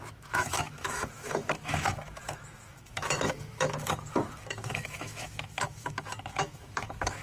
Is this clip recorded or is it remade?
remade